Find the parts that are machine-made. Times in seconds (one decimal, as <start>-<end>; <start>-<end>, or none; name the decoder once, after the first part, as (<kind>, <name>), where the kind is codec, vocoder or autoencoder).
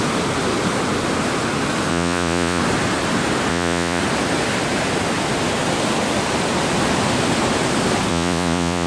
1.9-2.6 (vocoder, Vocos); 3.5-4.0; 8.1-8.9